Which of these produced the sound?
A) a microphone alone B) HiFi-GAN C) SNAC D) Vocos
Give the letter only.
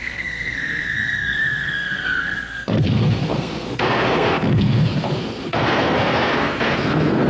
C